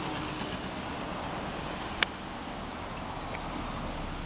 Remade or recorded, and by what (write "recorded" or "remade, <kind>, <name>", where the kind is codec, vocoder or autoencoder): recorded